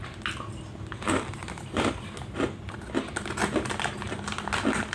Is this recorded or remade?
recorded